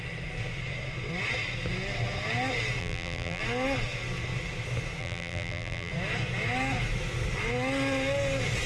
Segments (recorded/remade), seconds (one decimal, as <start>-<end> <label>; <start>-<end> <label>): 0.0-2.8 recorded; 2.8-3.4 remade; 3.4-5.0 recorded; 5.0-5.9 remade; 5.9-8.7 recorded